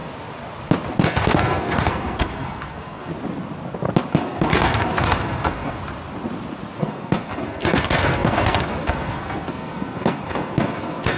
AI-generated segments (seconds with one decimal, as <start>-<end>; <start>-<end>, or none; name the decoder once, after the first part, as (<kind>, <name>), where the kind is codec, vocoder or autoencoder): 0.9-3.1 (codec, SNAC); 4.1-5.8; 6.8-11.2